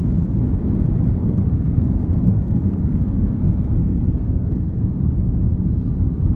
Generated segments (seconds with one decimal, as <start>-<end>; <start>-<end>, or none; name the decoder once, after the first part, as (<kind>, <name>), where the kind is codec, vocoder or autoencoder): 1.2-5.0 (codec, SNAC)